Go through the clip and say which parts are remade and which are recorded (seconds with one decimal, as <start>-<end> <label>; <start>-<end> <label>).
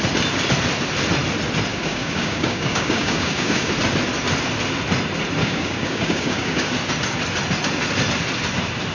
0.0-1.7 recorded; 1.7-3.7 remade; 3.7-5.4 recorded; 5.4-6.7 remade; 6.7-8.9 recorded